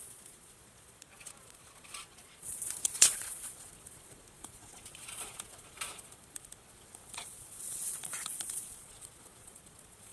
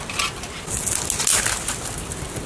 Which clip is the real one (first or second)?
second